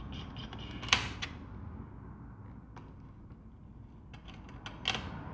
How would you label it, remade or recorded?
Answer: recorded